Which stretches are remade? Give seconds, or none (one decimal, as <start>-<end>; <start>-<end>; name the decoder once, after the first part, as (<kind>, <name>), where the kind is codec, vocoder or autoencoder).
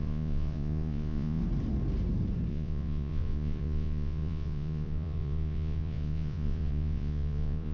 0.0-1.4 (vocoder, Vocos); 2.5-7.7